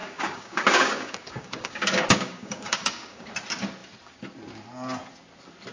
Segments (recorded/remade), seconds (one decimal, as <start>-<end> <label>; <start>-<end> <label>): 0.0-3.3 remade; 3.3-5.7 recorded